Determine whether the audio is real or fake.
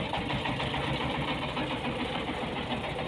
real